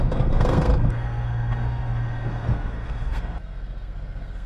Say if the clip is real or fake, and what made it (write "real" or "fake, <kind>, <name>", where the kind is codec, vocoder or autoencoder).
fake, codec, SNAC